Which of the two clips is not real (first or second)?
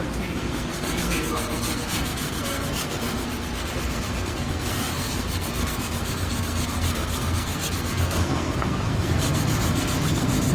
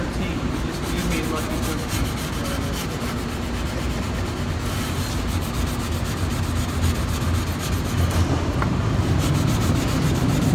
first